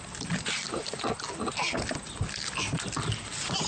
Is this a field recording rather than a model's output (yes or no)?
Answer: yes